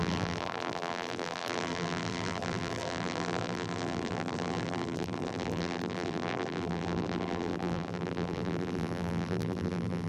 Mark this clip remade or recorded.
remade